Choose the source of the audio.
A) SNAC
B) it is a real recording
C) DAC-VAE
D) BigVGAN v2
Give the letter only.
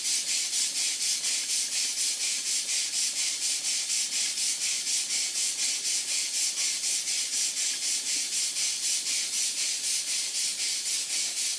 B